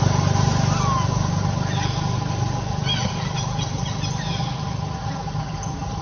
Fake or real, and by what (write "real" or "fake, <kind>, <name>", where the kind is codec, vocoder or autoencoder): real